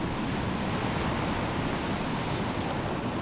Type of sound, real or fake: real